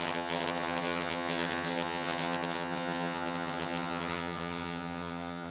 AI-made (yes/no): yes